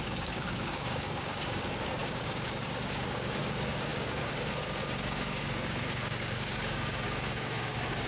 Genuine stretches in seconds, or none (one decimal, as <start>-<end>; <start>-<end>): none